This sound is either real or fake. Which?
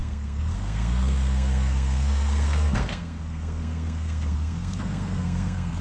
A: fake